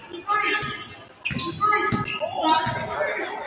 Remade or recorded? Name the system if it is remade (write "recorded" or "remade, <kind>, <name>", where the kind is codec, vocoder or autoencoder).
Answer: recorded